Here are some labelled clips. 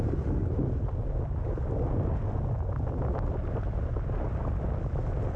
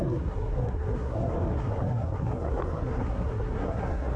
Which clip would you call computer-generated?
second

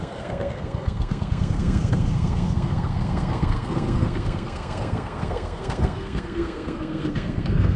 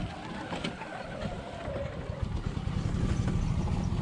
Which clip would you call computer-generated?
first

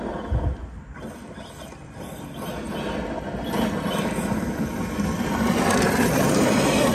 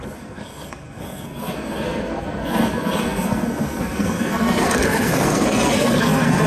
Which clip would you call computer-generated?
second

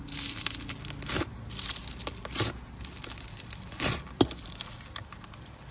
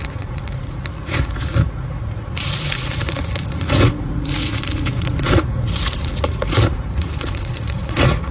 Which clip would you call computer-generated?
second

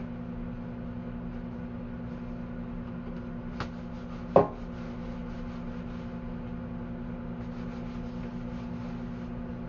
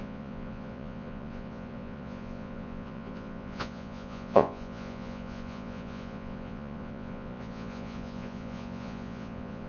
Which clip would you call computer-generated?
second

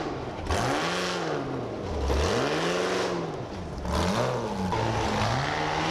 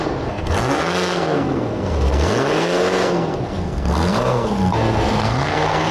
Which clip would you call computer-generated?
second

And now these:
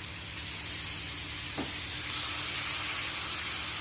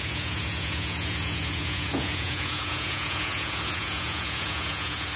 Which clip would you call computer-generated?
second